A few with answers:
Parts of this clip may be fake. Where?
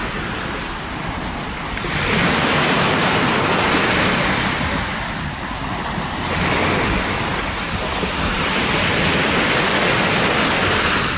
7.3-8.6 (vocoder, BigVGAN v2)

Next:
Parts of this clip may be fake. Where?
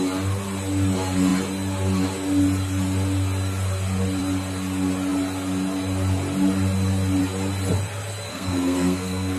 8.3-9.4 (codec, SNAC)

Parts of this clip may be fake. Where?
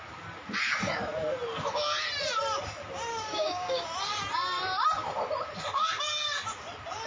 3.1-3.8 (codec, DAC)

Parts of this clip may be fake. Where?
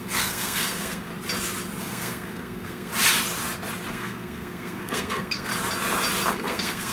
0.0-1.1 (codec, SNAC); 1.8-2.9; 3.9-5.5; 6.3-6.9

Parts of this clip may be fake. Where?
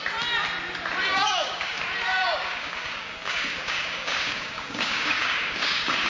1.1-1.8 (codec, DAC); 2.2-6.1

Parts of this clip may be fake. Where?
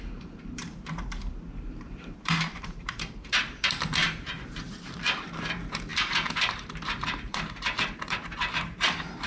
0.0-9.3 (vocoder, BigVGAN v2)